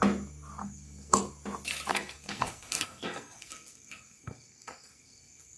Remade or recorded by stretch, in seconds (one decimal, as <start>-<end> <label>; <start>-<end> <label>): 0.0-0.6 recorded; 0.6-1.2 remade; 1.2-1.9 recorded; 1.9-5.6 remade